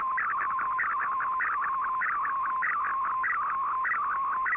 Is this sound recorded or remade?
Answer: recorded